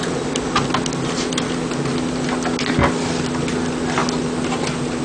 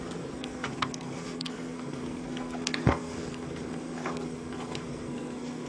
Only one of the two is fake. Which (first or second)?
second